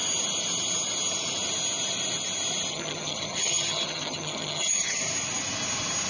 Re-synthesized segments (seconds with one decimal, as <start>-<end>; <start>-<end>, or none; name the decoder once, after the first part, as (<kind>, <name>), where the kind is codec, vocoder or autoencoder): 2.7-5.0 (vocoder, HiFi-GAN)